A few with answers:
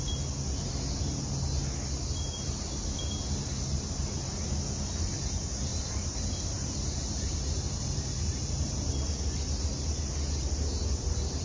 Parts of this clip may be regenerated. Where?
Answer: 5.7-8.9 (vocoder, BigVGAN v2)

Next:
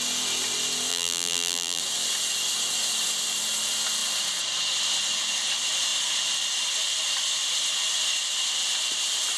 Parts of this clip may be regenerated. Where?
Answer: 0.9-1.8 (vocoder, BigVGAN v2)

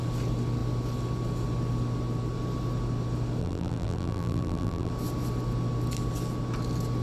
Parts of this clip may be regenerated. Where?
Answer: 3.4-4.9 (vocoder, BigVGAN v2)

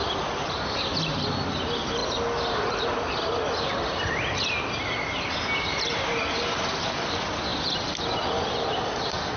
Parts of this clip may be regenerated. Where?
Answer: none

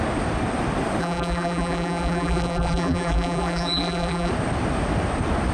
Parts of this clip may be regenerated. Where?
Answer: 1.0-4.3 (vocoder, BigVGAN v2)

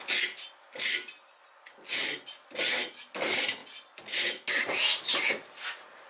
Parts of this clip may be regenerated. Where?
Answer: 3.6-4.8 (vocoder, BigVGAN v2)

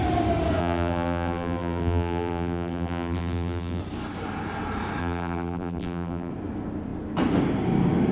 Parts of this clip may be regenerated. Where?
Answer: 0.6-3.8 (vocoder, BigVGAN v2); 5.0-6.3